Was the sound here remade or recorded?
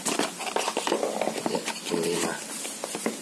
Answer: recorded